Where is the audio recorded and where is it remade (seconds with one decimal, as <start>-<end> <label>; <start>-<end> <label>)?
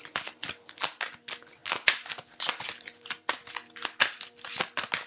0.0-5.1 recorded